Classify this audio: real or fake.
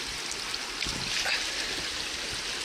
real